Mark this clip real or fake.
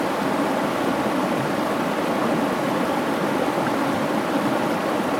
real